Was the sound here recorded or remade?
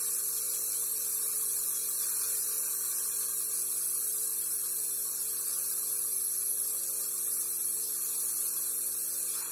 remade